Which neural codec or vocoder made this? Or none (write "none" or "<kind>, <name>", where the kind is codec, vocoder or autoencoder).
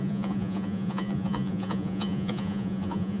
vocoder, Vocos